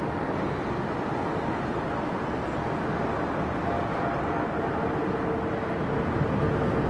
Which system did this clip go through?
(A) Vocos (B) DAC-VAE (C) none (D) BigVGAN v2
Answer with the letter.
C